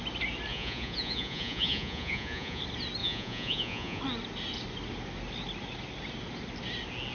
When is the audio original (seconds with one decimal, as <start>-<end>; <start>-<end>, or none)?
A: 0.0-0.5; 2.6-3.0; 4.0-7.1